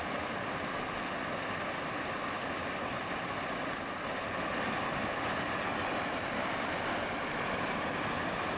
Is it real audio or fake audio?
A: real